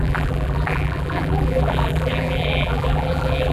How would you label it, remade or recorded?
remade